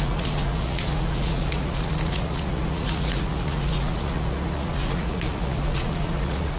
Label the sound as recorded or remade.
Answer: remade